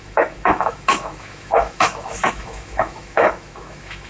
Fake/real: fake